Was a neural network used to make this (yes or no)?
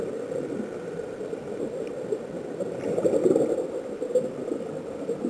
no